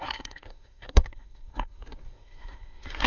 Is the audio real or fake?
fake